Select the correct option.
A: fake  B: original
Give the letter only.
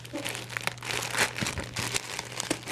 B